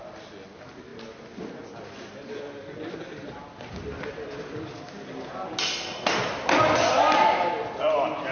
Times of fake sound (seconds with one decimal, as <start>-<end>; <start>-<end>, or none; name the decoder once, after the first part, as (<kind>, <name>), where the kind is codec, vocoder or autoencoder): none